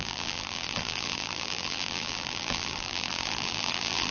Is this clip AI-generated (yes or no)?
yes